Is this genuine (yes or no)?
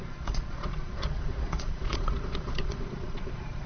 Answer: no